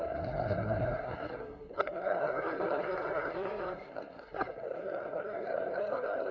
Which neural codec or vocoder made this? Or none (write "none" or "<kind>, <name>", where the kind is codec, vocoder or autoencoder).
codec, SNAC